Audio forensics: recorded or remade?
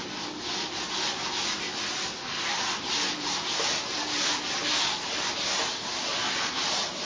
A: recorded